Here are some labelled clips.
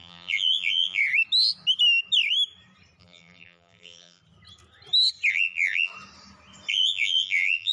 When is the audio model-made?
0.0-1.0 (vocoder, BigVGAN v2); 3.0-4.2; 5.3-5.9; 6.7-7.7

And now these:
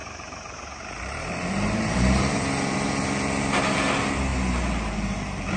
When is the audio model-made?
0.0-3.4 (vocoder, BigVGAN v2); 4.3-5.6

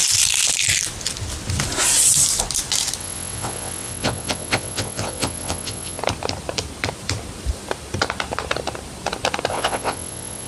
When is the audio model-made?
3.0-6.0 (vocoder, WaveNeXt); 9.5-10.5

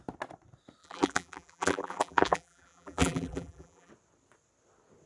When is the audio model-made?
0.8-3.9 (vocoder, BigVGAN v2)

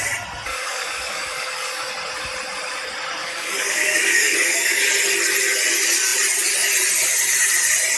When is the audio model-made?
0.5-1.9 (codec, DAC); 3.2-4.8

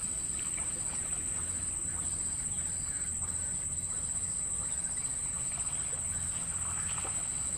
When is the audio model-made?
none

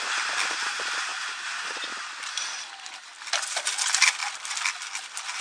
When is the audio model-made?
none

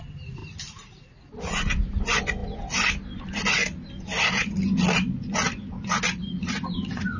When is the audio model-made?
0.4-1.2 (vocoder, BigVGAN v2)